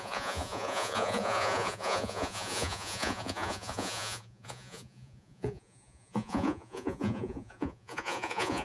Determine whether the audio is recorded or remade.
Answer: remade